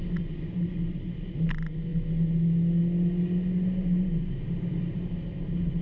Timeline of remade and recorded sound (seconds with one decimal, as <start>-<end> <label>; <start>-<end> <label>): 0.0-5.8 recorded